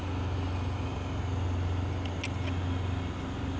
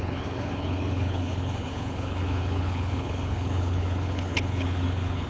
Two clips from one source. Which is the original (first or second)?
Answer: first